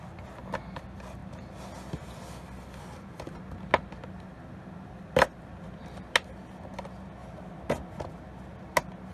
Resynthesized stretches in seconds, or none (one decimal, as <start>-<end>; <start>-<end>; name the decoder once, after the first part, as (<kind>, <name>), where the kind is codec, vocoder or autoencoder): none